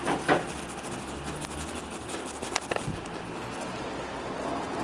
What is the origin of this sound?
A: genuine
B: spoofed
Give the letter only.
A